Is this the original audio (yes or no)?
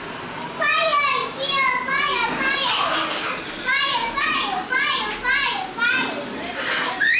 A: yes